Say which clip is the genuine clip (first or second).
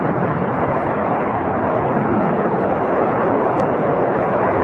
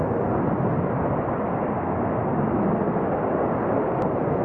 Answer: second